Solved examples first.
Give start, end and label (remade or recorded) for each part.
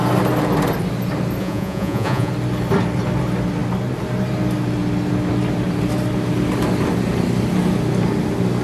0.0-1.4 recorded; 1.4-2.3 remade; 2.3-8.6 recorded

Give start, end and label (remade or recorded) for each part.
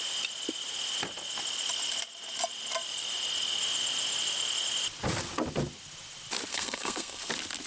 0.0-6.5 recorded; 6.5-7.3 remade; 7.3-7.7 recorded